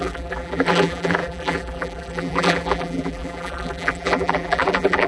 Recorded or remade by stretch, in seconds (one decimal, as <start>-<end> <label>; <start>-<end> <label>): 0.0-5.1 remade